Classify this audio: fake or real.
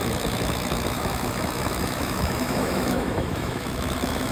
fake